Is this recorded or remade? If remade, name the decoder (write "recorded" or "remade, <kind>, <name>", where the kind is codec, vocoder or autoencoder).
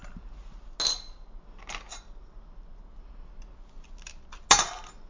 recorded